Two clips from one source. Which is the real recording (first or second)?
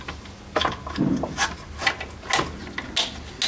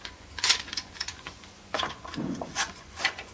first